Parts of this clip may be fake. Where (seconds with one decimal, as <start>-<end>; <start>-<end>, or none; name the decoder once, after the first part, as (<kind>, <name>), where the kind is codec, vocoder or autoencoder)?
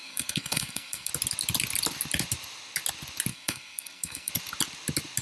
0.0-1.1 (codec, SNAC); 3.3-4.3